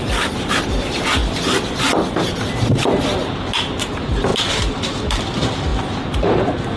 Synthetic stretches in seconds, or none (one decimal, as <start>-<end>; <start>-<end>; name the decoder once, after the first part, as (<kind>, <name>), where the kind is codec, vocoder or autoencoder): 0.0-1.2 (vocoder, BigVGAN v2); 3.4-6.8